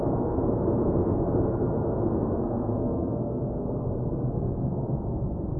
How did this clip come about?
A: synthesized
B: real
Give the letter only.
A